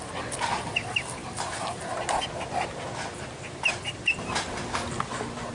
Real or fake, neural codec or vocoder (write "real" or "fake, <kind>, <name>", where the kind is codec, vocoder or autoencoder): real